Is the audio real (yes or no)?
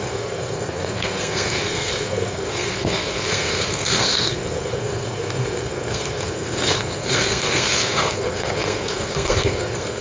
no